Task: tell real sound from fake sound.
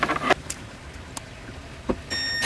real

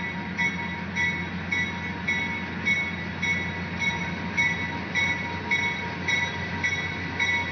real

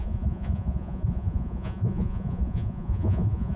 fake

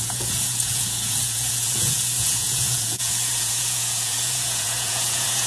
fake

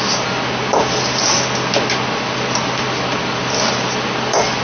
real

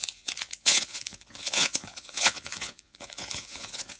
fake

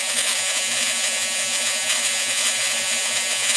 fake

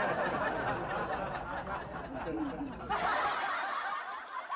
real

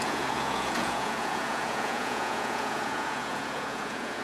fake